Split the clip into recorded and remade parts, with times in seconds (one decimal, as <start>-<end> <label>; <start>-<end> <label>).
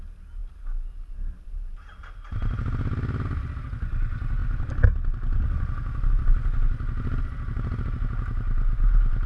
0.0-9.3 recorded